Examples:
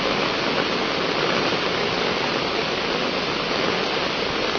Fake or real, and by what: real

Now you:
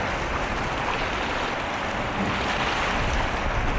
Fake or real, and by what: real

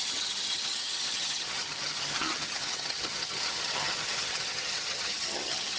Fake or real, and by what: fake, vocoder, HiFi-GAN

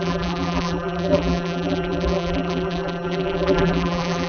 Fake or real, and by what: fake, vocoder, BigVGAN v2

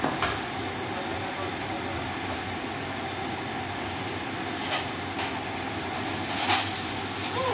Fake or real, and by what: real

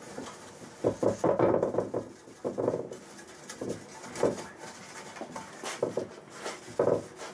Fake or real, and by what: real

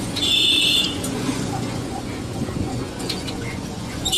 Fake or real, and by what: fake, vocoder, Vocos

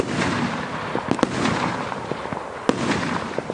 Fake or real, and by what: real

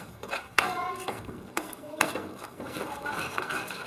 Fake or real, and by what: fake, codec, SNAC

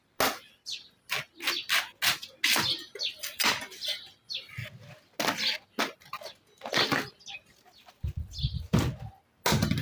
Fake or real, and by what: real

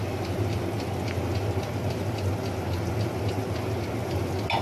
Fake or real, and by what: real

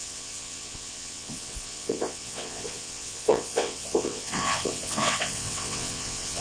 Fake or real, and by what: fake, vocoder, WaveNeXt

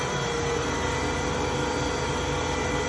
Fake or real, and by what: real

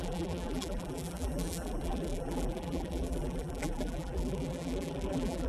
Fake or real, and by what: fake, vocoder, BigVGAN v2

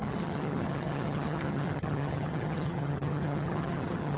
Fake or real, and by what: fake, vocoder, HiFi-GAN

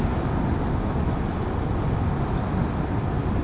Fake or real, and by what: real